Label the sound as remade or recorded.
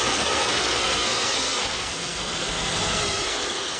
remade